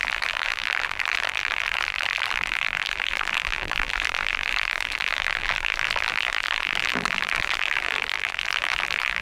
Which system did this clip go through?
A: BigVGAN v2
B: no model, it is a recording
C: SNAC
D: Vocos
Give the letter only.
A